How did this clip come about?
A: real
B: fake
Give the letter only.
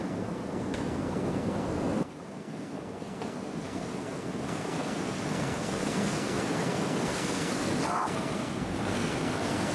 B